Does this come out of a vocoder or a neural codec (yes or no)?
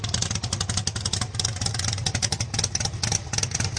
no